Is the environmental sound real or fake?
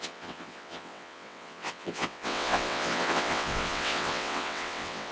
fake